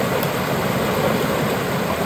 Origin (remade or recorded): recorded